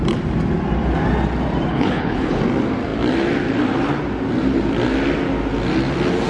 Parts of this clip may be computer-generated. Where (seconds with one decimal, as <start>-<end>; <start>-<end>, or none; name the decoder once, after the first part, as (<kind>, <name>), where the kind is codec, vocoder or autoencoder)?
1.7-2.4 (codec, HILCodec)

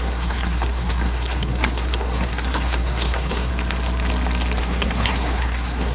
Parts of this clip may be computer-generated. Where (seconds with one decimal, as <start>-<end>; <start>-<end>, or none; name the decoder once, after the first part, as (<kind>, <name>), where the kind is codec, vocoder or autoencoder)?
0.0-3.5 (codec, SNAC); 4.6-5.9